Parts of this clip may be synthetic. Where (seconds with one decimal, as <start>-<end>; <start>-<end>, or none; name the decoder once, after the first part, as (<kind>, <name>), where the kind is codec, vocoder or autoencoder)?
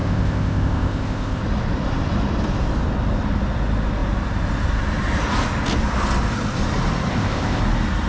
0.0-1.4 (codec, ZipCodec); 7.1-7.6